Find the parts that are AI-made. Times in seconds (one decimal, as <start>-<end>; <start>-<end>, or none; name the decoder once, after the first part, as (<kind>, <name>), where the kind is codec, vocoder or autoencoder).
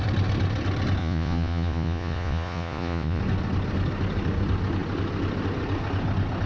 1.0-3.2 (vocoder, Vocos)